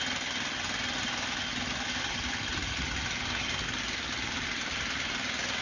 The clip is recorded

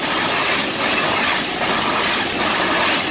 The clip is recorded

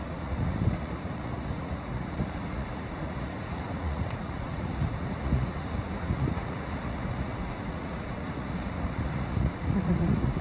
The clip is remade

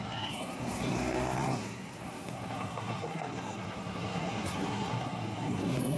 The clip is remade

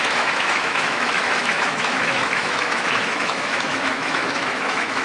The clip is remade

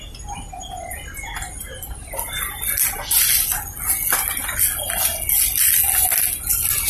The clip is recorded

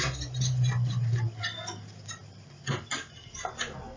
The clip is recorded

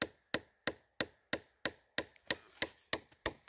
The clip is recorded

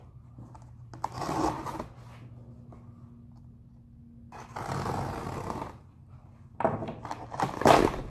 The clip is recorded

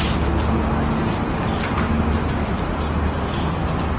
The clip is recorded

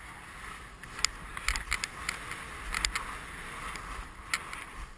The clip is recorded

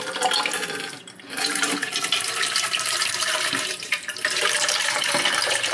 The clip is remade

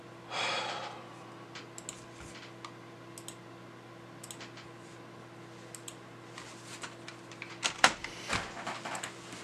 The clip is recorded